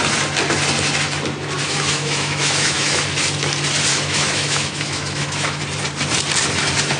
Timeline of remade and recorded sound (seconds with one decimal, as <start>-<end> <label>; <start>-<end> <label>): 0.0-1.6 recorded; 1.6-3.0 remade; 3.0-3.9 recorded; 3.9-5.6 remade; 5.6-7.0 recorded